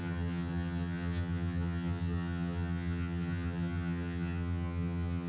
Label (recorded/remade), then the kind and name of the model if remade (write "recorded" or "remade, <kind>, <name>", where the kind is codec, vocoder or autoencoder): remade, vocoder, HiFi-GAN